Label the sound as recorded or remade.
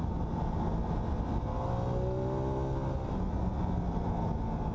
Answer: recorded